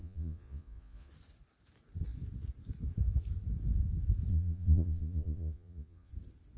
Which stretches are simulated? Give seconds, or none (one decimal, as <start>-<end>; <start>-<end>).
0.0-1.1; 4.3-6.1